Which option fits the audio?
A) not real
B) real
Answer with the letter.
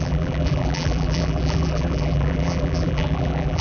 A